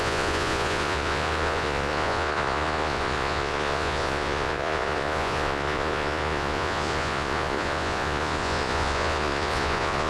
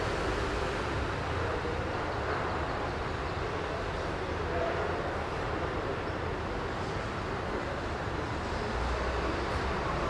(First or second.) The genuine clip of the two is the second